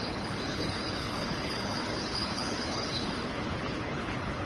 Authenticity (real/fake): fake